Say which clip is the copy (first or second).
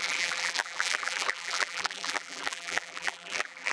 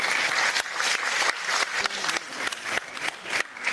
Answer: first